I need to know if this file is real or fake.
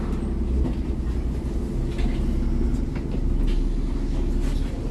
real